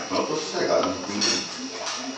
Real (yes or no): yes